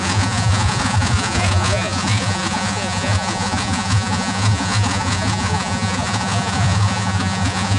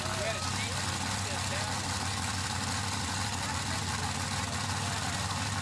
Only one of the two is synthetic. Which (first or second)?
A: first